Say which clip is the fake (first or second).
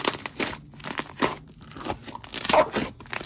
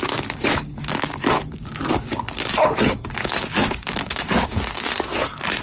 second